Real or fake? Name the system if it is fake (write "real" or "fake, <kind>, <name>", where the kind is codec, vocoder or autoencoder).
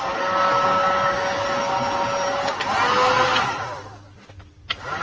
real